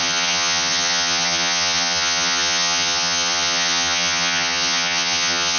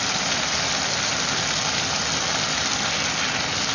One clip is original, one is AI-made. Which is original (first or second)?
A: second